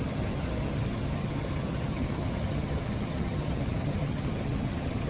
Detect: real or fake fake